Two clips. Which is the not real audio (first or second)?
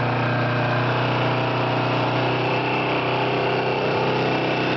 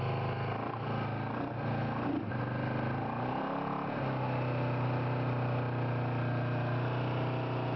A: first